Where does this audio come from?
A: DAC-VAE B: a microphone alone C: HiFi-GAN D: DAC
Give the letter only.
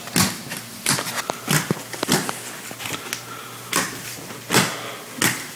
B